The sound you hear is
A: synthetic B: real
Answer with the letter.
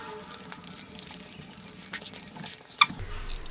B